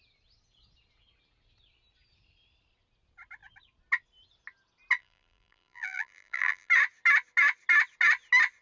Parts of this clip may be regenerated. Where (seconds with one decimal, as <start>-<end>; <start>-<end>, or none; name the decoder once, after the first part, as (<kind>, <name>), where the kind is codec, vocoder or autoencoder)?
5.0-6.7 (vocoder, BigVGAN v2)